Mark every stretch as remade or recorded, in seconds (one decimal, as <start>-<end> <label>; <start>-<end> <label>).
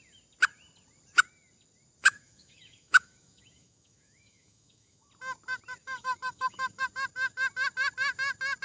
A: 0.0-2.0 recorded; 2.0-5.1 remade; 5.1-5.8 recorded; 5.8-6.8 remade; 6.8-8.6 recorded